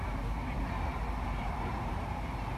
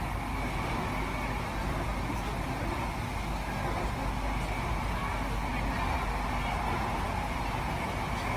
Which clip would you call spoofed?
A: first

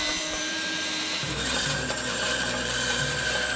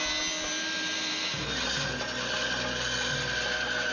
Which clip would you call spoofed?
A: first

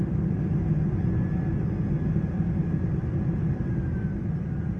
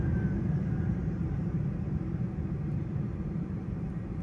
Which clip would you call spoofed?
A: second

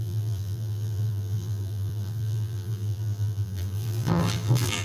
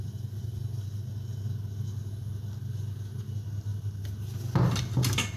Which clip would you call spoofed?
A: first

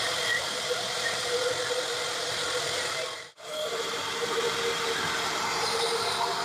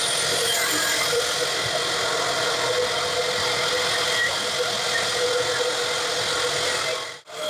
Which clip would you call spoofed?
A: first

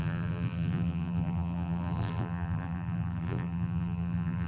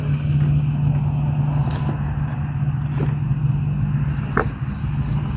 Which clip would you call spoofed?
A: first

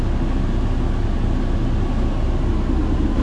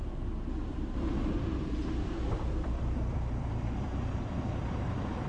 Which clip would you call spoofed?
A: second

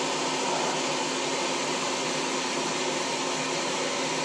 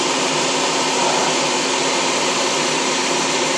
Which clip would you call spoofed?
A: second